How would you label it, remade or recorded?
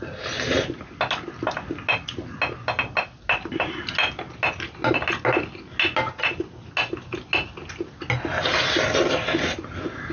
recorded